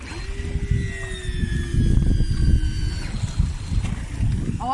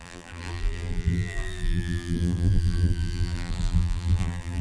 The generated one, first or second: second